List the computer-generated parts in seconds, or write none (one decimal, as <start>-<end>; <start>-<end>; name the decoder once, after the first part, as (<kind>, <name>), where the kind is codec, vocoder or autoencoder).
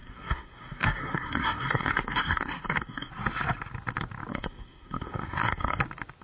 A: 0.0-3.1 (codec, SNAC); 4.3-5.8